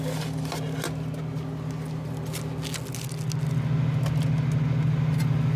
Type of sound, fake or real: real